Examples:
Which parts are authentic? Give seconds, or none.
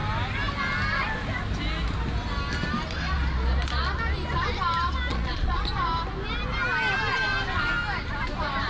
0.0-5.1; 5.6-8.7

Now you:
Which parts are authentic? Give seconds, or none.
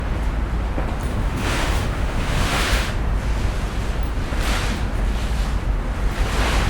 0.0-1.1; 2.9-6.7